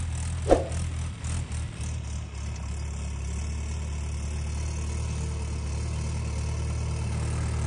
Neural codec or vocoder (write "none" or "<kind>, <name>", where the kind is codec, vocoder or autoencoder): none